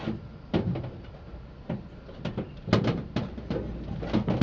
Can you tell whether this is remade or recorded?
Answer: recorded